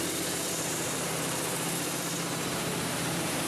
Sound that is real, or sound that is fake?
fake